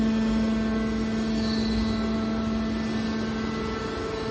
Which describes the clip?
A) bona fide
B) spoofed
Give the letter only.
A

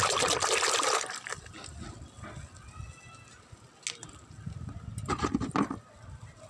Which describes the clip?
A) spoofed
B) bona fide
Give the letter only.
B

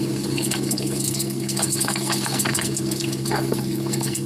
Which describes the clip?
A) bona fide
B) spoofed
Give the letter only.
B